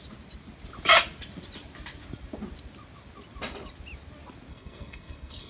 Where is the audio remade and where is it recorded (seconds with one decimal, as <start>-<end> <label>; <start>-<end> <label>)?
0.0-4.5 recorded; 4.5-5.5 remade